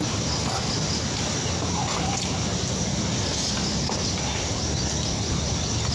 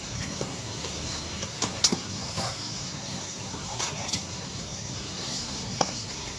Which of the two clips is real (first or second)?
first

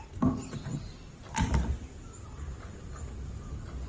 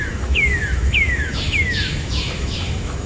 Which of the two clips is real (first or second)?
first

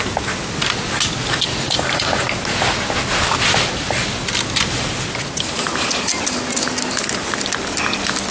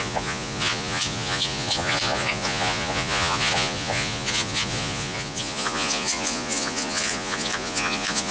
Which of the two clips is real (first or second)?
first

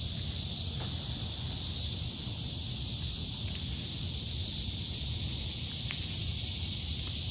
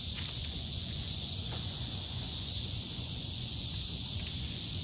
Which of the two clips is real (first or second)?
first